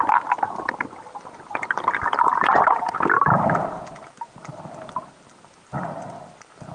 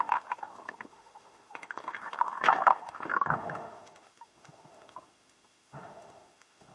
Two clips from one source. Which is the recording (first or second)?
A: first